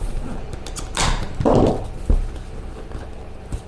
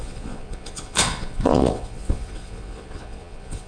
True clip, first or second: first